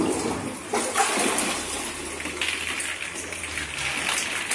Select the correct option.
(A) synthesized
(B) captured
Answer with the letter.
B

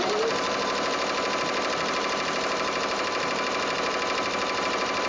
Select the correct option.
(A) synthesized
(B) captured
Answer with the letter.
B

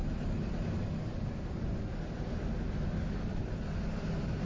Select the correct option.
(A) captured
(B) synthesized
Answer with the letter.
A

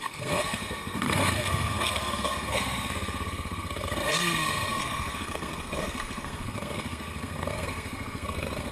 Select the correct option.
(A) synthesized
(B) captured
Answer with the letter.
A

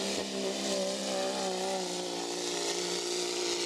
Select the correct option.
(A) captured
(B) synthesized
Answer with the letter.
A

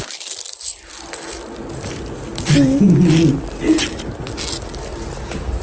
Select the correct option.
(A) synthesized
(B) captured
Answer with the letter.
B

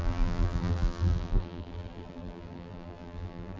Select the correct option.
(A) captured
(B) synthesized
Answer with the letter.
B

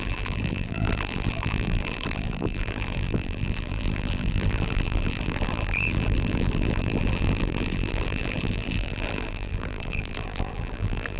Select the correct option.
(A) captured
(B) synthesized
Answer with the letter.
B